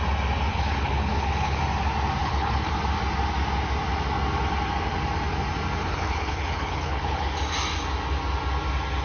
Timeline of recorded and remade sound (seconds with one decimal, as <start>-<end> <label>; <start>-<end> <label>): 0.0-0.5 recorded; 0.5-1.6 remade; 1.6-2.2 recorded; 2.2-2.7 remade; 2.7-5.8 recorded; 5.8-7.3 remade; 7.3-9.0 recorded